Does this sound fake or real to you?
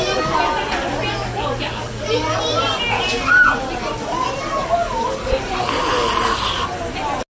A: real